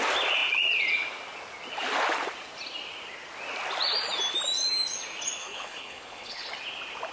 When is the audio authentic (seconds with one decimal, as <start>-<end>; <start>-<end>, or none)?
0.0-5.4; 6.5-7.1